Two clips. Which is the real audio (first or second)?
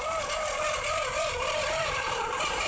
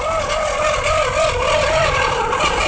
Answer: second